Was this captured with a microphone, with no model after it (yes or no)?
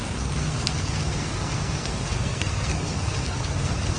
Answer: no